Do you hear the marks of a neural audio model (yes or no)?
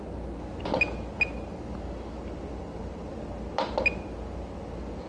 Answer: no